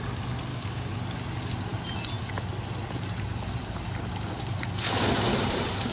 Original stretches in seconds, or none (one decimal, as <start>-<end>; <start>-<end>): 0.0-0.5; 1.0-5.9